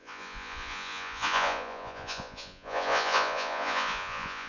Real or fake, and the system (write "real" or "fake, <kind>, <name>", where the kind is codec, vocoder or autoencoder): fake, vocoder, Vocos